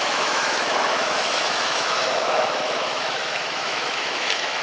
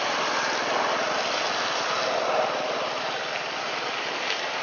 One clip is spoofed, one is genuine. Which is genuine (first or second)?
second